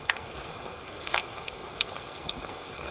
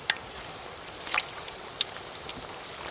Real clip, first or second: second